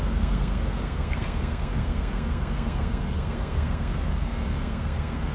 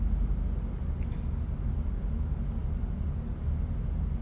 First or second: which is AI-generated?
first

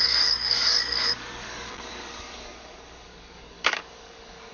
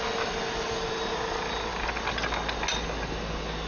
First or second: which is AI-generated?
first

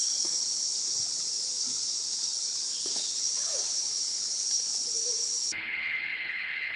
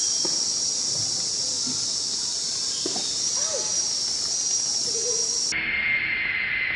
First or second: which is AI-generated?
first